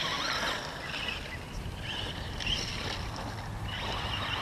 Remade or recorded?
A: recorded